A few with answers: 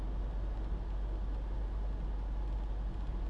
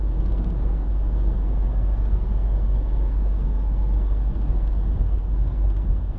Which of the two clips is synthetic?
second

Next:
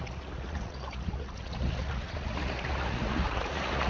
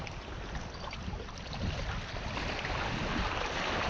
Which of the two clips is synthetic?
first